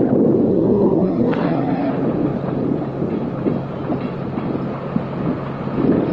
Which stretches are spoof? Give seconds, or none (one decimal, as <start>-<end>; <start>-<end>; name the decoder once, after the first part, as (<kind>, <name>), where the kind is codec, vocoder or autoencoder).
0.5-1.9 (codec, SNAC)